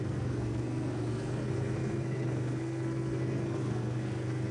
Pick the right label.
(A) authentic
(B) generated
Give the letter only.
B